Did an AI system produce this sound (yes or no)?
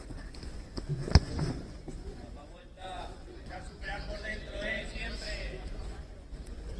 yes